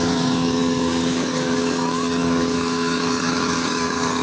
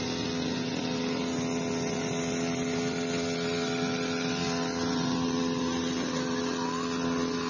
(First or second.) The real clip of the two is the second